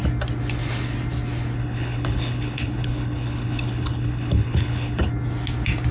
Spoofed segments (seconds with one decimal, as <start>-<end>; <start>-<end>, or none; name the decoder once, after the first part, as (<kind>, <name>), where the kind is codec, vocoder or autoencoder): 1.6-5.1 (codec, HILCodec)